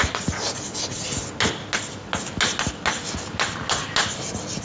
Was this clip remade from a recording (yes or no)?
no